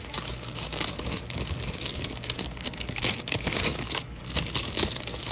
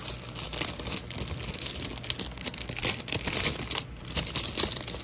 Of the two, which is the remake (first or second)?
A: first